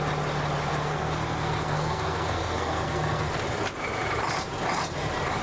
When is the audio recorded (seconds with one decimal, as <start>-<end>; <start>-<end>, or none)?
0.0-0.7; 3.3-5.4